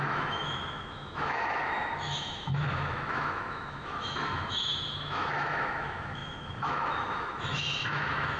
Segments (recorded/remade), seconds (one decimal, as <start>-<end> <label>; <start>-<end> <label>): 0.0-8.4 remade